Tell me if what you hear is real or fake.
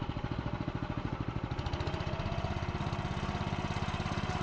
real